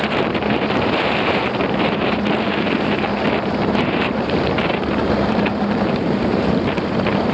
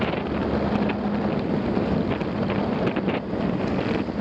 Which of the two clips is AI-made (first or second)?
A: first